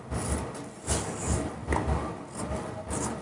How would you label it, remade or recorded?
recorded